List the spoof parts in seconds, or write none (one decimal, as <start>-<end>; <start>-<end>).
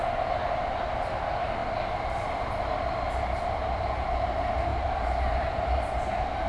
4.7-6.5